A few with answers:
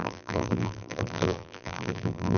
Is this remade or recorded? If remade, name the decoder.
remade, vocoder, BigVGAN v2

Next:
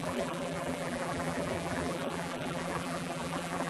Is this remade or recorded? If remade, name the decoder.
remade, vocoder, BigVGAN v2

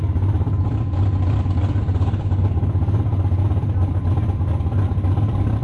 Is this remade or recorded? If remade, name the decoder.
remade, vocoder, BigVGAN v2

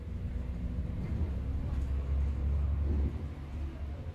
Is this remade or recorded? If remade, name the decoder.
recorded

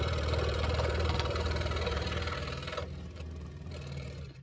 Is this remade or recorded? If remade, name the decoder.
remade, vocoder, BigVGAN v2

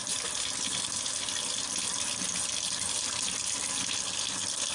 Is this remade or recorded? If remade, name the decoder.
recorded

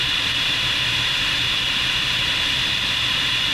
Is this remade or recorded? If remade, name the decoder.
remade, vocoder, BigVGAN v2